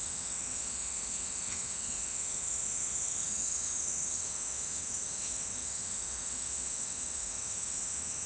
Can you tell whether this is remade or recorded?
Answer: remade